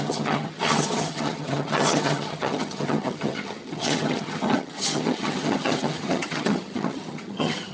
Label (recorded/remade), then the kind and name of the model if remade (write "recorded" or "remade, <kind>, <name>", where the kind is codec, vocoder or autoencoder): remade, vocoder, HiFi-GAN